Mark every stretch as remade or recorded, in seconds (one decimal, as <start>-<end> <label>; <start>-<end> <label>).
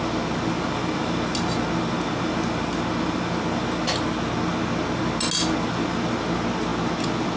0.0-7.4 recorded